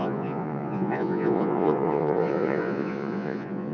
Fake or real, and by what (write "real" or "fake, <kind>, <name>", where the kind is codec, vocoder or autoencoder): fake, vocoder, Vocos